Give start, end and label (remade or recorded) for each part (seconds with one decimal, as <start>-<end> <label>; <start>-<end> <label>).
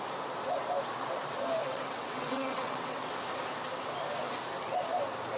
0.0-1.6 recorded; 1.6-3.1 remade; 3.1-5.4 recorded